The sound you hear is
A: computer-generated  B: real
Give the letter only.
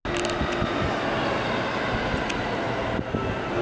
B